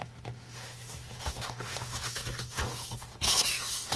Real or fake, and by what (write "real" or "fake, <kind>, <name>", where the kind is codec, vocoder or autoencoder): fake, autoencoder, DAC-VAE